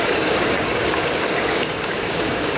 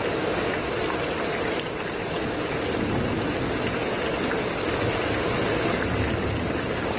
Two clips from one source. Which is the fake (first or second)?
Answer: first